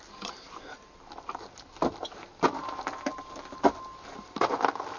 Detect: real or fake real